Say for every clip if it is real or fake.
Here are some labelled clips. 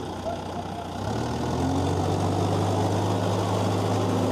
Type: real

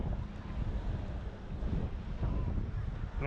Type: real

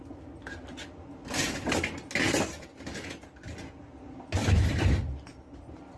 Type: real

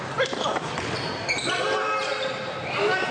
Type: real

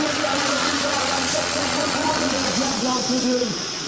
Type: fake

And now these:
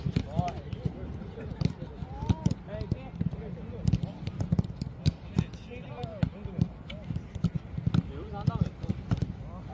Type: real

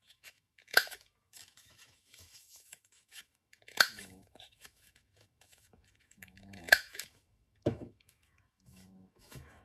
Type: fake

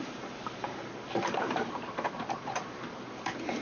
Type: fake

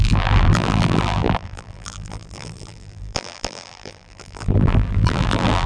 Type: fake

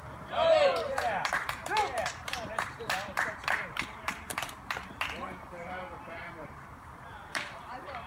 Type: fake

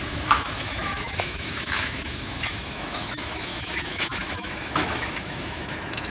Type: fake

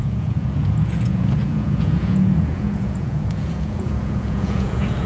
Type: fake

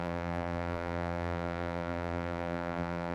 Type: fake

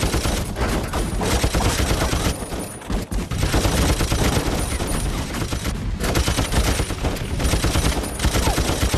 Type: real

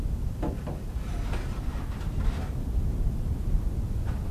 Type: real